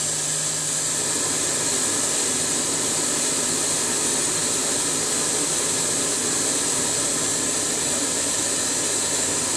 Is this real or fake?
real